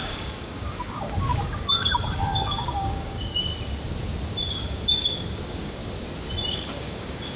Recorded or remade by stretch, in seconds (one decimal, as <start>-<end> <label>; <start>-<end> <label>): 0.0-3.5 remade; 3.5-4.5 recorded; 4.5-5.8 remade; 5.8-6.5 recorded; 6.5-7.4 remade